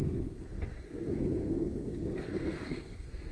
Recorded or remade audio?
remade